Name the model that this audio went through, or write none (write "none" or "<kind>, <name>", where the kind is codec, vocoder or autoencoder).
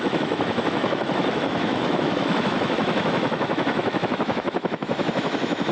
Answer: autoencoder, DAC-VAE